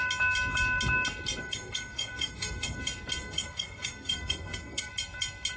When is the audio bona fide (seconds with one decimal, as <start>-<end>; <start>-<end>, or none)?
0.0-1.4; 2.8-3.2; 4.9-5.6